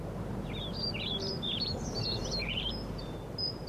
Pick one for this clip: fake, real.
fake